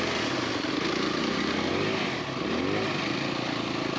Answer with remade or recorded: recorded